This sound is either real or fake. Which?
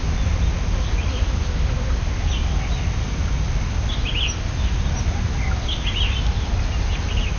real